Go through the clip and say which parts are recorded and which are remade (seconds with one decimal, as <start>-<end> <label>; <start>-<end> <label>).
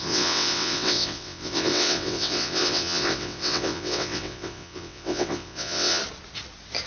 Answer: 0.0-6.0 remade; 6.0-6.9 recorded